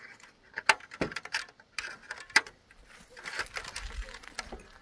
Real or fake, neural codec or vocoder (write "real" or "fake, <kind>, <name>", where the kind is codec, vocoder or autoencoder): real